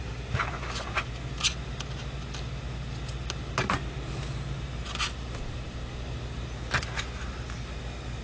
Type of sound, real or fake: real